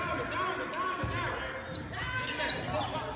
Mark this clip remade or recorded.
recorded